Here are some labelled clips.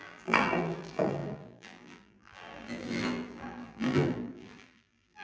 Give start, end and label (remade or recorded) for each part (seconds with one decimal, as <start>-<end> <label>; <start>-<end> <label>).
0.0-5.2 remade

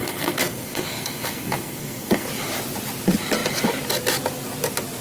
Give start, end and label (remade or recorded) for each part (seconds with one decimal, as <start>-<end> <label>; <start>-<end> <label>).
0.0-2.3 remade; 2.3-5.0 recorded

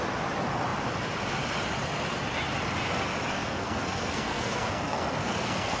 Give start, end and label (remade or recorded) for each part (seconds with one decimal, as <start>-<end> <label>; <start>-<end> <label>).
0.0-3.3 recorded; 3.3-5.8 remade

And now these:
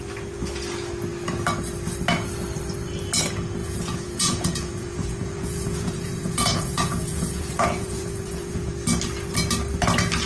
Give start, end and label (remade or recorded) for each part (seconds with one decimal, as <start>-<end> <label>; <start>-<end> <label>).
0.0-3.6 recorded; 3.6-8.7 remade; 8.7-10.3 recorded

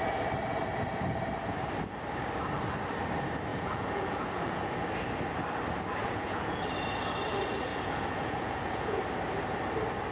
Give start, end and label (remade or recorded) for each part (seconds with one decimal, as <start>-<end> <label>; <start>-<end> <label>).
0.0-3.5 recorded; 3.5-4.7 remade; 4.7-6.0 recorded; 6.0-6.6 remade; 6.6-7.7 recorded; 7.7-9.0 remade; 9.0-10.1 recorded